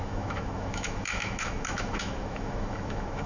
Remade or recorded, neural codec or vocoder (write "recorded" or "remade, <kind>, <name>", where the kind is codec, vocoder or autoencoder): remade, autoencoder, DAC-VAE